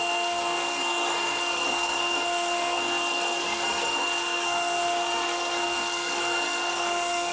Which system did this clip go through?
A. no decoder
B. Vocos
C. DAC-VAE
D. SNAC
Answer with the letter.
D